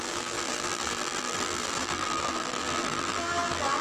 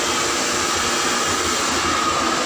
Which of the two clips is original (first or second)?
second